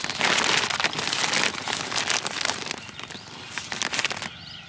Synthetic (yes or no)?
no